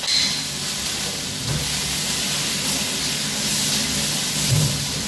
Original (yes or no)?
yes